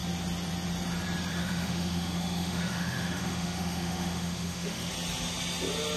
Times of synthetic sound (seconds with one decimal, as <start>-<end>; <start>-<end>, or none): 1.3-4.9